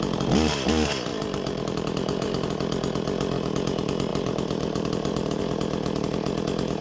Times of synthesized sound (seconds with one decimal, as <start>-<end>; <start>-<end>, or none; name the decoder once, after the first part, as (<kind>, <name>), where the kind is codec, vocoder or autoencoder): 1.1-2.5 (vocoder, BigVGAN v2); 4.1-5.4

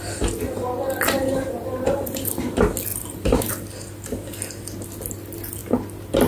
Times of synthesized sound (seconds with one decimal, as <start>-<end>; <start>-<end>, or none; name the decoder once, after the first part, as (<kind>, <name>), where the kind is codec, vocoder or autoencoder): 1.3-2.3 (vocoder, BigVGAN v2); 2.9-3.5

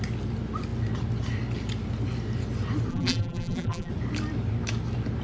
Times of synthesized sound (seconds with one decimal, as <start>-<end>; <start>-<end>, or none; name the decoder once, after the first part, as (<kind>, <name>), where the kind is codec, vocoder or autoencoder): 2.9-3.9 (vocoder, BigVGAN v2)

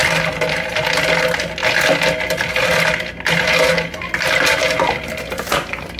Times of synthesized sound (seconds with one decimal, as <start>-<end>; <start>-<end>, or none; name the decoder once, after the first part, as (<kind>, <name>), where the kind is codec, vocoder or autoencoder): 0.0-0.8 (vocoder, BigVGAN v2)

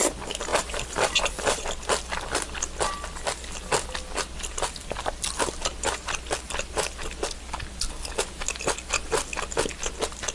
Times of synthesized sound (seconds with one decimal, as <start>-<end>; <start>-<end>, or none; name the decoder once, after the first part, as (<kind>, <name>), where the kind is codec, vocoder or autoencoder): 0.5-1.6 (vocoder, BigVGAN v2); 4.8-5.5

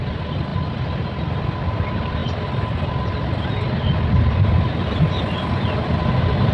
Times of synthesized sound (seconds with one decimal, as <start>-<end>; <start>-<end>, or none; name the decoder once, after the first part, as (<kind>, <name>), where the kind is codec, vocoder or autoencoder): none

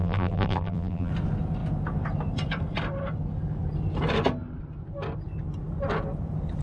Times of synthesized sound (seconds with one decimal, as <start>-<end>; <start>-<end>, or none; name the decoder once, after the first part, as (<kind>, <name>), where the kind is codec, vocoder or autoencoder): 0.0-1.1 (vocoder, BigVGAN v2)

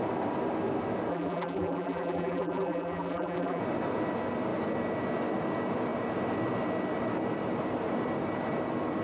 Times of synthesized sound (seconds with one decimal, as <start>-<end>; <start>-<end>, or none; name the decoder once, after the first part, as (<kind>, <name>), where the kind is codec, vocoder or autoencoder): 1.1-3.6 (vocoder, BigVGAN v2)